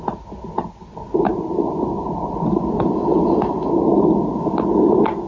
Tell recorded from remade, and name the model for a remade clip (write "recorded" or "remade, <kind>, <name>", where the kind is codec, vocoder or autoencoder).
recorded